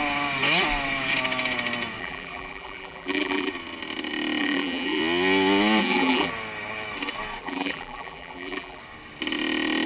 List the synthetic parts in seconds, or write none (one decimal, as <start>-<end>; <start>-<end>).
2.0-3.5; 4.4-5.0; 5.8-6.3; 7.4-8.8